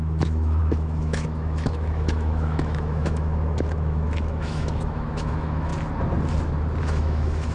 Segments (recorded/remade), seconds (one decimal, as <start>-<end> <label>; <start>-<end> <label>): 0.0-5.7 remade; 5.7-6.8 recorded; 6.8-7.5 remade